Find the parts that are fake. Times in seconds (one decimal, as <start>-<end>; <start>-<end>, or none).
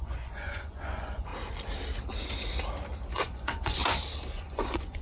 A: 0.0-1.3; 3.1-3.8; 4.3-5.0